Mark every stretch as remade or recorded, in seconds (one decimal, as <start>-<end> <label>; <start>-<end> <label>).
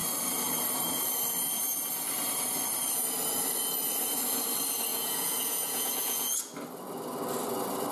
0.0-4.9 recorded; 4.9-6.5 remade; 6.5-7.9 recorded